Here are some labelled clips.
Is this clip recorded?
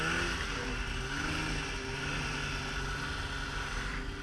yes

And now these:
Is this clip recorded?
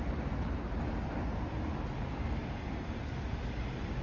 yes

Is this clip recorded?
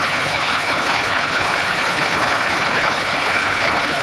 no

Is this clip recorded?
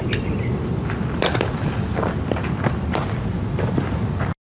yes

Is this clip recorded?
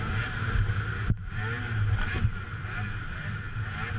yes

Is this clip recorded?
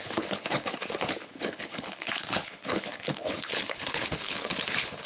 no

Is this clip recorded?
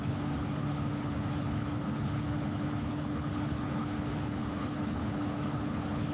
no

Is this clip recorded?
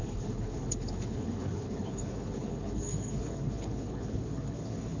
no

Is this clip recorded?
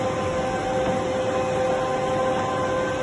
yes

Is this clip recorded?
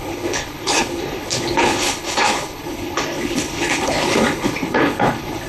no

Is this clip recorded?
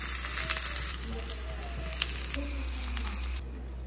yes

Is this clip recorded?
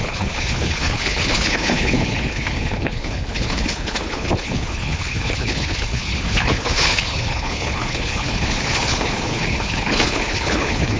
no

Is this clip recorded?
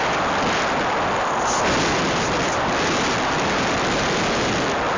yes